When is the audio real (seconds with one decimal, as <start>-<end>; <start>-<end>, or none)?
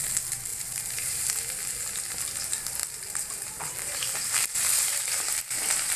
0.0-0.5; 1.3-2.8; 5.2-6.0